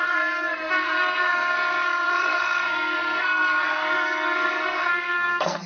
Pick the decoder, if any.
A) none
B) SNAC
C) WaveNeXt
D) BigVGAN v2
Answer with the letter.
B